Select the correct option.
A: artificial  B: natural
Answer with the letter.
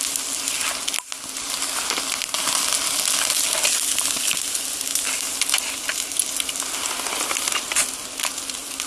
B